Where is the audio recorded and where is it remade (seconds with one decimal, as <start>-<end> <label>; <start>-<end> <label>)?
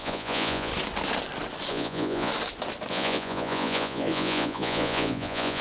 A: 0.0-0.7 remade; 0.7-1.7 recorded; 1.7-2.3 remade; 2.3-2.9 recorded; 2.9-5.6 remade